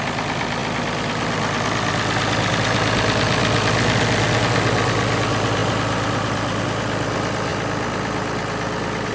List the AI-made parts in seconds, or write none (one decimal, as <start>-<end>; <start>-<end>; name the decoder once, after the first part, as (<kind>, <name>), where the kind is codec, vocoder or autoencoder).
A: none